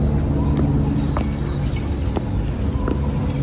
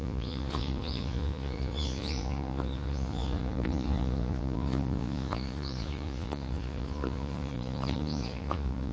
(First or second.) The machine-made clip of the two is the second